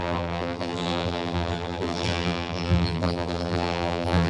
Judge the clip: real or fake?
fake